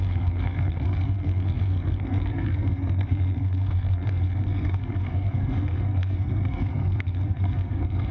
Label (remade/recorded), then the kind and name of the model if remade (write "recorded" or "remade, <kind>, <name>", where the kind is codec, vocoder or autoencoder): remade, codec, SNAC